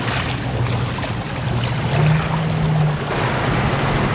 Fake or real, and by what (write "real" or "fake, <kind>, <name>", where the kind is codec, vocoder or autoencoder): real